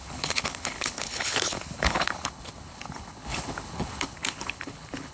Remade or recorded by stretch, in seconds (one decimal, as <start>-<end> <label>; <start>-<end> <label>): 0.0-5.1 remade